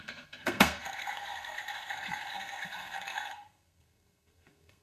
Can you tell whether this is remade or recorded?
remade